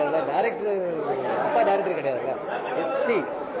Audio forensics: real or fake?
fake